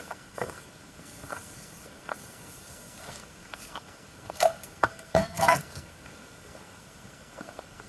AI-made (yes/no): yes